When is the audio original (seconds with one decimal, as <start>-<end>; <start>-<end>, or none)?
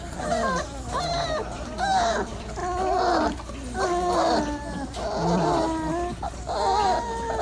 0.0-7.4